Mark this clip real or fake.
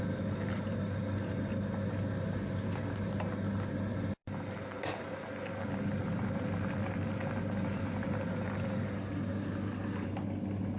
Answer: real